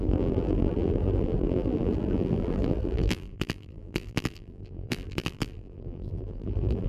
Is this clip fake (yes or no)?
yes